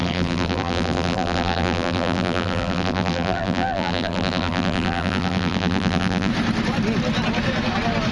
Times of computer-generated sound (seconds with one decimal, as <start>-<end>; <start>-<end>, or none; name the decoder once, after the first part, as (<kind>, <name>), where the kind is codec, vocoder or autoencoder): 0.0-6.3 (vocoder, BigVGAN v2)